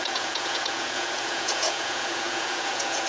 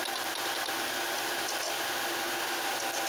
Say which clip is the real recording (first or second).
second